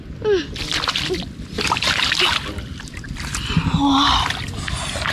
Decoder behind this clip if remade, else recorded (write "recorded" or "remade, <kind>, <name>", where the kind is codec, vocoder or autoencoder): recorded